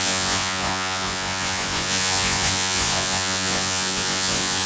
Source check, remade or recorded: remade